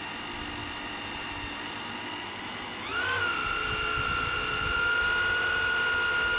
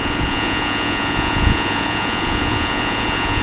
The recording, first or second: first